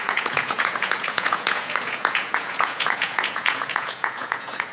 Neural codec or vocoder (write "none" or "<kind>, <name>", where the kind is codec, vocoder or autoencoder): vocoder, Vocos